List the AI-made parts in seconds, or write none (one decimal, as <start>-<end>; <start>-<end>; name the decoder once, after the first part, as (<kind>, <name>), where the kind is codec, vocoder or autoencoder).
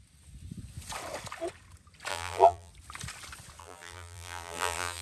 2.1-2.7 (vocoder, BigVGAN v2); 3.6-5.0